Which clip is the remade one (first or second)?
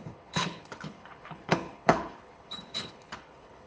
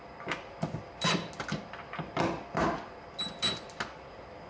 first